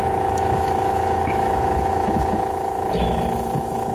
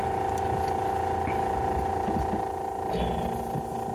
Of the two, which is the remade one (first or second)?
first